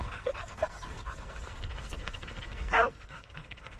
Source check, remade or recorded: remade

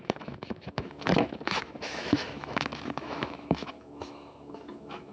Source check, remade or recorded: remade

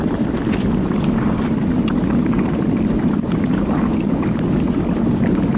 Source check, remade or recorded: recorded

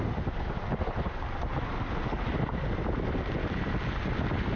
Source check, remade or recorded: recorded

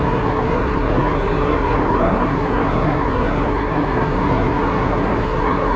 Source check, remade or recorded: remade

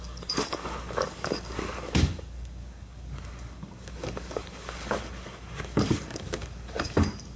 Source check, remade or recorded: remade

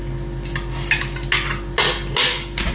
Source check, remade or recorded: recorded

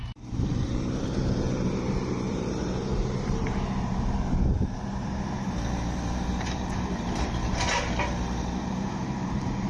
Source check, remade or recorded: remade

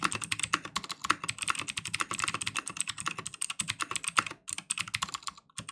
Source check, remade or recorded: recorded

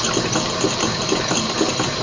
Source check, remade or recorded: recorded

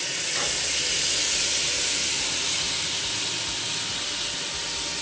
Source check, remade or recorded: recorded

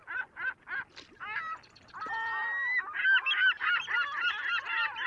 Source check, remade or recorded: recorded